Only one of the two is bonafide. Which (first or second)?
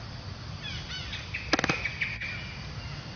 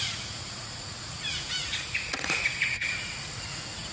first